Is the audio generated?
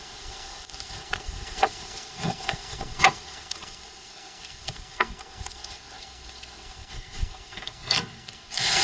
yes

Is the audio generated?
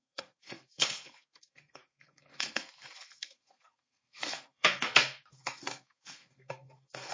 yes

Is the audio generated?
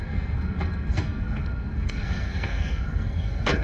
yes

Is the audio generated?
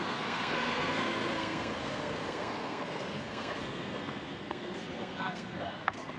yes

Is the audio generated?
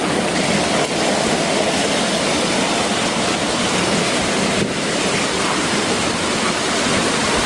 no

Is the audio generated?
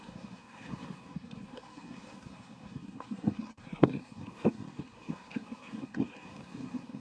yes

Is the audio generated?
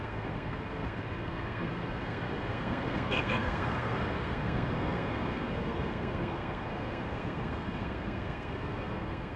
yes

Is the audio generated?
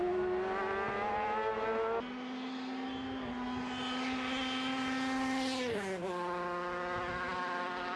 no